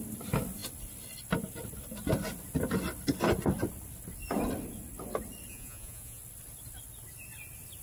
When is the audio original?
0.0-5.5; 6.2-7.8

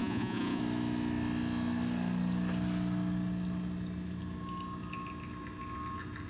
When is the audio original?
0.6-6.3

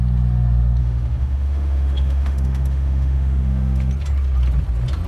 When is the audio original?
0.0-0.8; 3.9-5.1